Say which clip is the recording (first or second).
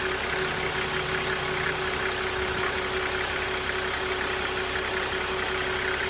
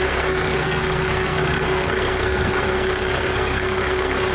first